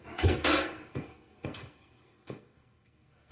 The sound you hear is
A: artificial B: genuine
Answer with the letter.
A